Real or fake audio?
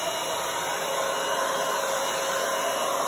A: real